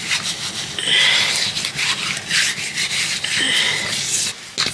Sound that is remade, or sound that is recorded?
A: recorded